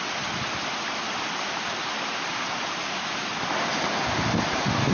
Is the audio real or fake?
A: fake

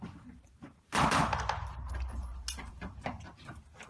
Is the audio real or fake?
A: fake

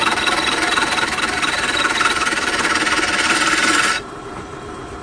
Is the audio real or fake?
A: fake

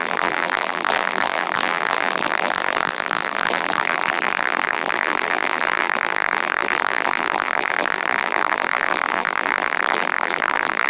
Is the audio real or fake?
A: fake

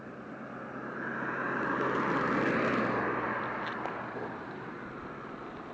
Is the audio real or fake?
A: real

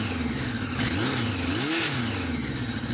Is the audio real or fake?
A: real